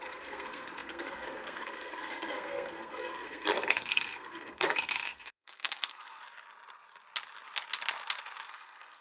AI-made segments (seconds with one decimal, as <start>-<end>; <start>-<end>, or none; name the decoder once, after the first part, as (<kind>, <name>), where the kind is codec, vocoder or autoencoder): 0.0-6.2 (codec, SNAC); 8.5-9.0